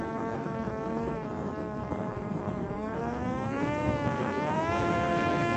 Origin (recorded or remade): remade